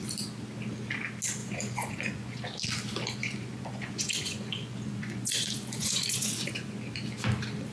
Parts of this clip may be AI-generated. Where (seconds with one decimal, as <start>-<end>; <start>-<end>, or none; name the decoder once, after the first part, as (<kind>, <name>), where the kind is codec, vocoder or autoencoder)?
1.4-2.4 (vocoder, Vocos); 3.2-6.9